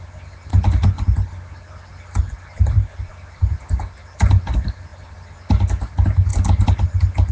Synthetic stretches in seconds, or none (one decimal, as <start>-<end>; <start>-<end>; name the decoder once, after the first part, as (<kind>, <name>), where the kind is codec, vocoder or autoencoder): 1.9-3.6 (vocoder, BigVGAN v2); 4.9-5.7